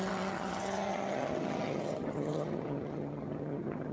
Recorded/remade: remade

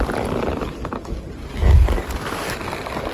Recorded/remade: recorded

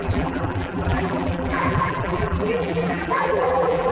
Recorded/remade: remade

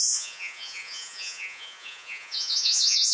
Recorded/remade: remade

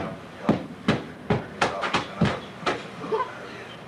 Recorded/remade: recorded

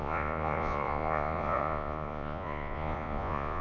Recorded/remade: remade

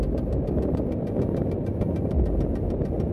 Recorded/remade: recorded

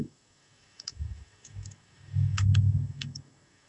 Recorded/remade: remade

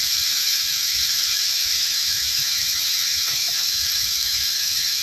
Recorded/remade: remade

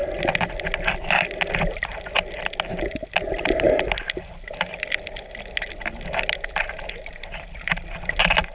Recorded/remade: recorded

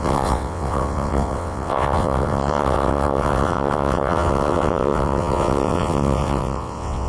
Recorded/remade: remade